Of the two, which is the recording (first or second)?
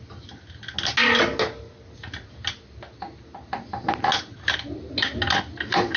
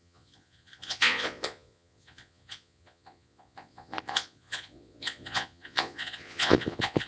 first